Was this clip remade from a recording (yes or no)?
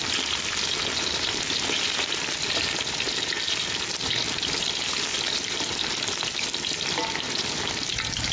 yes